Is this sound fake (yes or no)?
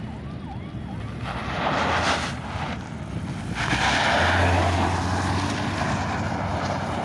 no